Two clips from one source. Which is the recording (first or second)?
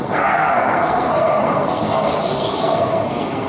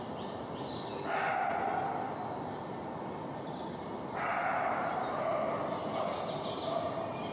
second